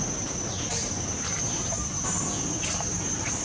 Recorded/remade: recorded